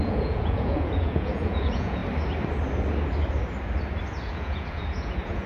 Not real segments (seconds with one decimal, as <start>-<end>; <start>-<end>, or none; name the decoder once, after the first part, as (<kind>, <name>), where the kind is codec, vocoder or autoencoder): 0.0-2.0 (vocoder, Vocos); 4.1-5.5